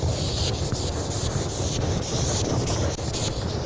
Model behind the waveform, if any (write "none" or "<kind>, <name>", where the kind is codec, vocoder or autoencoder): none